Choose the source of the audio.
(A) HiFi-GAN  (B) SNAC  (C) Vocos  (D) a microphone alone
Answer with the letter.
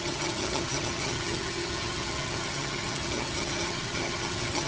A